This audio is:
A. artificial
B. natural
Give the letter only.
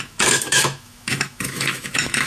A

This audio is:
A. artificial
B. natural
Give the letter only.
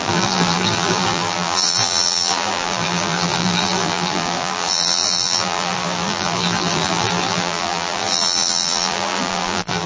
A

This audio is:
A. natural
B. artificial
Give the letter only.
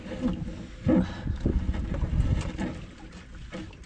A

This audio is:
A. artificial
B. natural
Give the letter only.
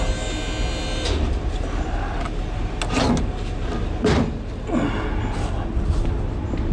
B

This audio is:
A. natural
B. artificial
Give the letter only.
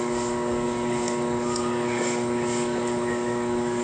B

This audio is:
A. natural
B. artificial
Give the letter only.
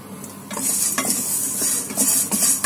A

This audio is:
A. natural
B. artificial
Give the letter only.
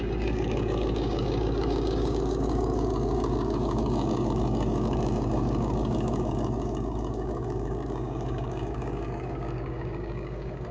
B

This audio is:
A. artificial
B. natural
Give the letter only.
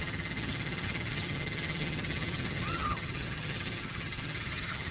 A